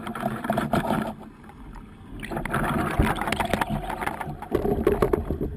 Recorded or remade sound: recorded